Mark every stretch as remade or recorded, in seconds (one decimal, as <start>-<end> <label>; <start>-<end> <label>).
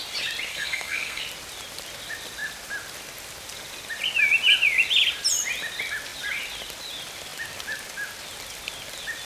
0.0-0.5 recorded; 0.5-1.2 remade; 1.2-9.2 recorded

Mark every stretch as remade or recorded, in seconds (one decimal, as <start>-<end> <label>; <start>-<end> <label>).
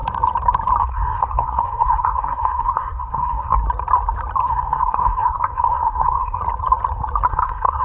0.0-0.8 recorded; 0.8-3.6 remade; 3.6-4.4 recorded; 4.4-6.4 remade; 6.4-7.3 recorded; 7.3-7.8 remade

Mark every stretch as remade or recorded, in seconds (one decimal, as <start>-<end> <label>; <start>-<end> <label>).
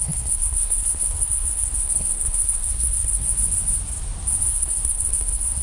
0.0-3.3 remade; 3.3-4.5 recorded; 4.5-5.6 remade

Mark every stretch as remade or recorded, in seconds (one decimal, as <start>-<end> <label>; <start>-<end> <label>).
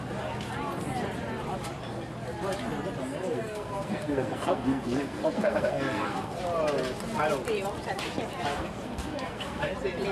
0.0-3.1 recorded; 3.1-6.4 remade; 6.4-8.5 recorded; 8.5-9.7 remade; 9.7-10.1 recorded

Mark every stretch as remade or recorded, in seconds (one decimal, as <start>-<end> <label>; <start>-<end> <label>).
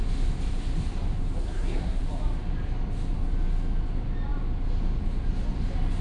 0.0-1.4 recorded; 1.4-2.0 remade; 2.0-6.0 recorded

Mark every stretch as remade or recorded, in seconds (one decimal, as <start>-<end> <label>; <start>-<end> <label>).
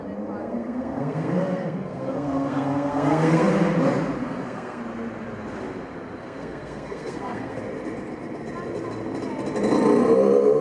0.0-0.4 recorded; 0.4-3.5 remade; 3.5-4.2 recorded; 4.2-4.8 remade; 4.8-6.2 recorded; 6.2-7.6 remade; 7.6-10.6 recorded